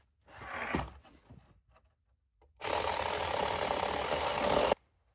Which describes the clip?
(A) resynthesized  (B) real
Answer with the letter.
B